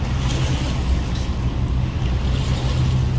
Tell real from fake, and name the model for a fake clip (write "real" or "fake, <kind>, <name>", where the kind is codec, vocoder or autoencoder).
real